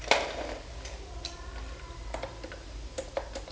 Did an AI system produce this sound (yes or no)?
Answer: no